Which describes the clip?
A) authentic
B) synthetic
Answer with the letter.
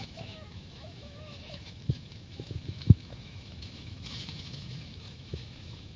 B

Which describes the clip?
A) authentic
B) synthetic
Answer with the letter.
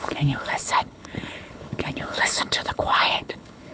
B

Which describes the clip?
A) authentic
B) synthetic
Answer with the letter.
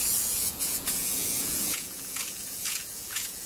B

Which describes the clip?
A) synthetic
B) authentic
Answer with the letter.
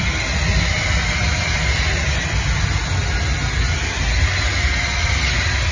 B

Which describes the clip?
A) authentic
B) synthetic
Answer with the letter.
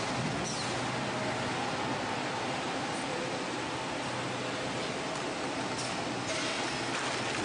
A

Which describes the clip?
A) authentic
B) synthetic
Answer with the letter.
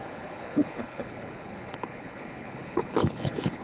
B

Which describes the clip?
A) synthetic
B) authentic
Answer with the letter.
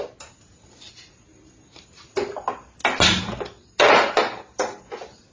B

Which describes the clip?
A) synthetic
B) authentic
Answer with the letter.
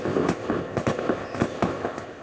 A